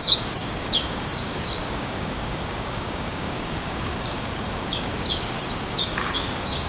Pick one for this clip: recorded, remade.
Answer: remade